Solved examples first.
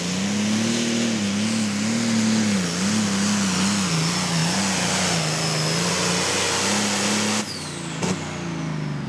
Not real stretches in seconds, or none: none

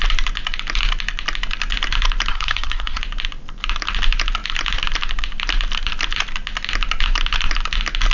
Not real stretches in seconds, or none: 2.3-3.0 (codec, SNAC)

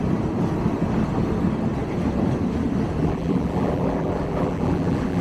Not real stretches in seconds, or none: 3.0-5.2 (vocoder, BigVGAN v2)

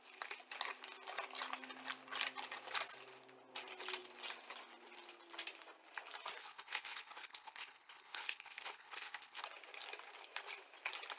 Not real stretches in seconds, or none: 6.4-9.4 (codec, HILCodec)

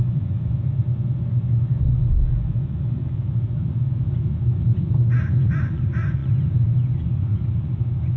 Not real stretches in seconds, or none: 0.0-3.0 (vocoder, Vocos); 4.3-8.2

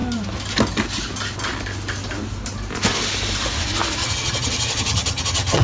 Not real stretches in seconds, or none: 4.0-5.6 (vocoder, HiFi-GAN)

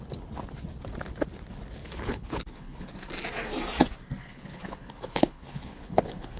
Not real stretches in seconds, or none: 1.8-2.9 (codec, HILCodec); 4.3-6.4